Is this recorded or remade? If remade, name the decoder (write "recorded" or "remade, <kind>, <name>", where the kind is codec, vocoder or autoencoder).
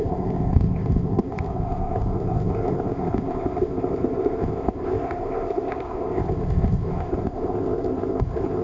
remade, codec, ZipCodec